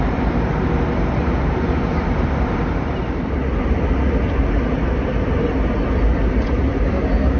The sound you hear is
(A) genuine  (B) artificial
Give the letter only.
A